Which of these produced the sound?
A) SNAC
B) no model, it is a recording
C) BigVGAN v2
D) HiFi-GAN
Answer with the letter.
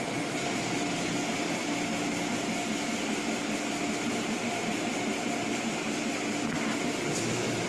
B